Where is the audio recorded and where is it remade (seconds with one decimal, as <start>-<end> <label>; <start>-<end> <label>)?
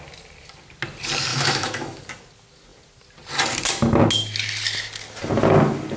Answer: 0.0-1.3 recorded; 1.3-2.0 remade; 2.0-6.0 recorded